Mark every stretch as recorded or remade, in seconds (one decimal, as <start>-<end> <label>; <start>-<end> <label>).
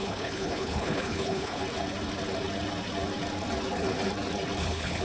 0.0-1.6 remade; 1.6-4.6 recorded; 4.6-5.0 remade